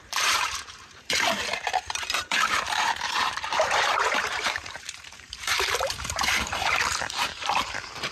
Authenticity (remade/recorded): remade